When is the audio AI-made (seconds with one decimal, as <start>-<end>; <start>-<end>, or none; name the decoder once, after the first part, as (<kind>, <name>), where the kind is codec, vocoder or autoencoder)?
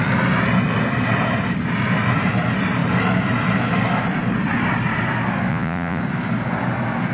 5.5-6.0 (vocoder, Vocos)